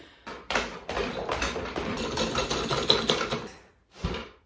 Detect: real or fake real